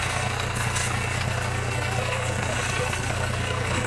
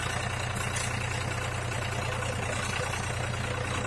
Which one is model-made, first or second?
first